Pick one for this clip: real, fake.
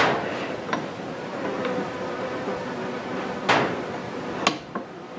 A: real